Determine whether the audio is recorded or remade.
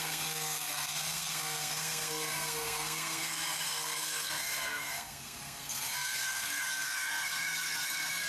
remade